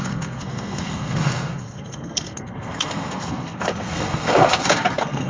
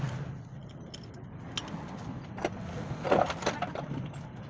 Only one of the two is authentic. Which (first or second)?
second